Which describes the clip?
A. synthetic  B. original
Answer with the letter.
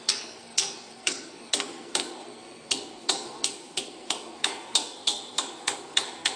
A